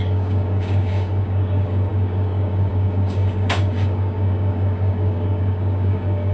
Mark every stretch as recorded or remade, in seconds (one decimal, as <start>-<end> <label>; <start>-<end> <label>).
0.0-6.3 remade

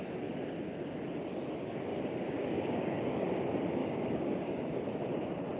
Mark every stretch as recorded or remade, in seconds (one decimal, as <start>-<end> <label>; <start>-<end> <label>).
0.0-1.9 recorded; 1.9-3.3 remade; 3.3-3.8 recorded; 3.8-4.7 remade; 4.7-5.6 recorded

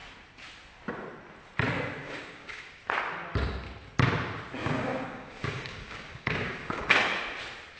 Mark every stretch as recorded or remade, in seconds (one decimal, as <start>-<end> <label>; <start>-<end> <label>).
0.0-2.0 recorded; 2.0-2.8 remade; 2.8-4.6 recorded; 4.6-6.9 remade; 6.9-7.8 recorded